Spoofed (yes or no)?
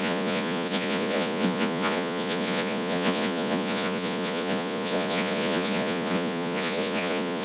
yes